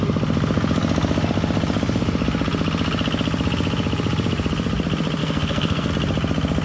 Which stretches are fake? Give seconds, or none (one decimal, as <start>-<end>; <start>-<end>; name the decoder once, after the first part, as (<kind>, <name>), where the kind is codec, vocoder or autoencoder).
5.2-5.9 (codec, SNAC)